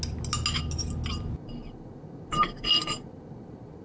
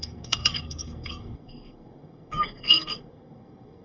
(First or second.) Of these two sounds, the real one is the first